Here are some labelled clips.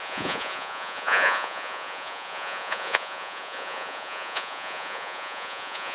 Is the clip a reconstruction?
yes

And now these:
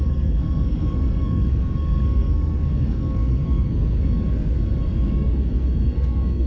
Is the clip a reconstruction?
yes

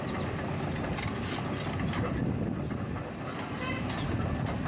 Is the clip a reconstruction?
no